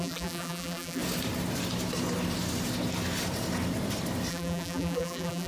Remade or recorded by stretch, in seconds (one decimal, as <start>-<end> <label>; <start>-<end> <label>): 0.0-1.0 remade; 1.0-4.3 recorded; 4.3-5.5 remade